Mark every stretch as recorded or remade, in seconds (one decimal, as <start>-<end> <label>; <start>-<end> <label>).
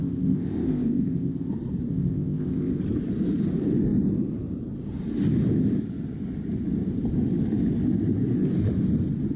0.0-1.5 remade; 1.5-1.9 recorded; 1.9-2.8 remade; 2.8-9.4 recorded